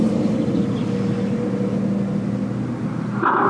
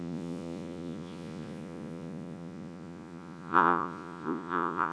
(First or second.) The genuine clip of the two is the first